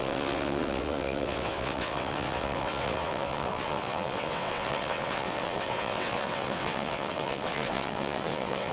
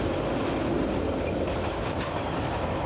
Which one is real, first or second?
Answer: second